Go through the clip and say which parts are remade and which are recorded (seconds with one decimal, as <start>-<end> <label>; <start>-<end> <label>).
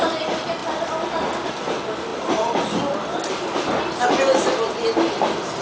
0.0-5.6 recorded